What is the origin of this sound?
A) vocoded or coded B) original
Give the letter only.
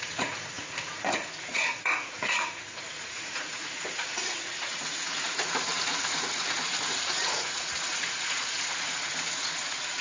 A